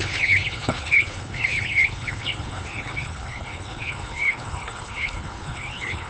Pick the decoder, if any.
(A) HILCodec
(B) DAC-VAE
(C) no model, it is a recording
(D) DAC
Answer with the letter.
A